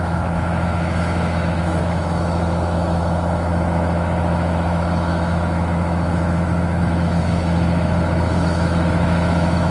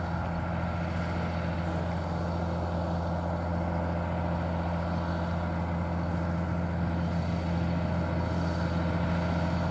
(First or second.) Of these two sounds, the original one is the second